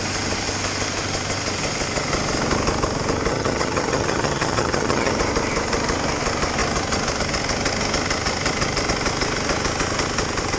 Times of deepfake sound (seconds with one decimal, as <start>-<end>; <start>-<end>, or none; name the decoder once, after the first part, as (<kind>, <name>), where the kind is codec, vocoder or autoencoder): 3.3-5.1 (vocoder, HiFi-GAN)